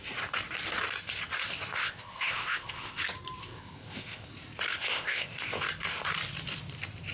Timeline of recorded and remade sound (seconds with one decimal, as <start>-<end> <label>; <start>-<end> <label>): 0.0-1.8 recorded; 1.8-3.0 remade; 3.0-3.4 recorded; 3.4-4.3 remade; 4.3-4.7 recorded; 4.7-5.6 remade; 5.6-7.1 recorded